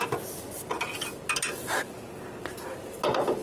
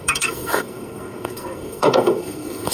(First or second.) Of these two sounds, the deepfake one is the second